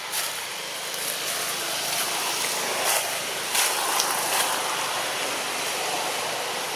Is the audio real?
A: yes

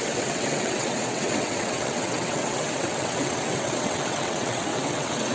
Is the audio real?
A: no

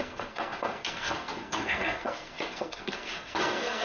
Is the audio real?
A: no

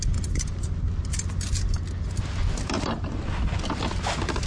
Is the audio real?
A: yes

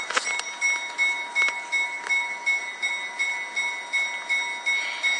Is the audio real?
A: yes